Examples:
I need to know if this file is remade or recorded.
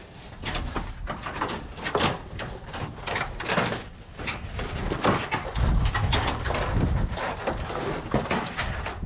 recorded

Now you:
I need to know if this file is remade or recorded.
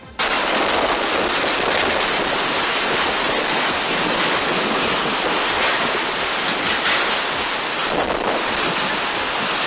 recorded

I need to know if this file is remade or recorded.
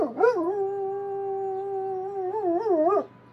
recorded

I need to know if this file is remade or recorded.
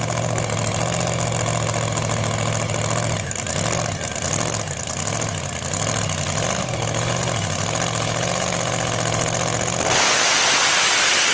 recorded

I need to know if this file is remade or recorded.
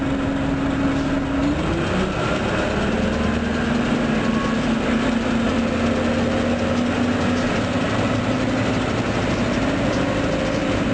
recorded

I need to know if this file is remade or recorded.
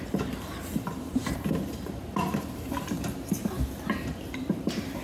remade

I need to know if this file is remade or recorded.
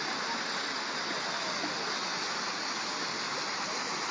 recorded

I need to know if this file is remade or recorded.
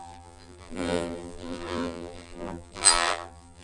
remade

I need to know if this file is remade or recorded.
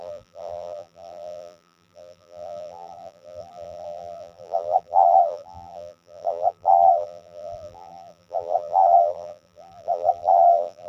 remade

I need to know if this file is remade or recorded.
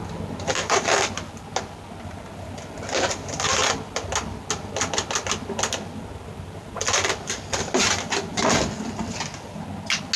recorded